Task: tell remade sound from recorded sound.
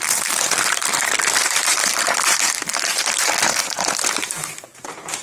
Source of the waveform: remade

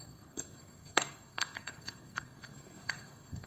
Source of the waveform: remade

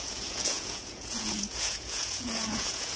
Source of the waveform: remade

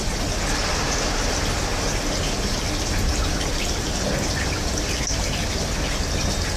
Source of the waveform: recorded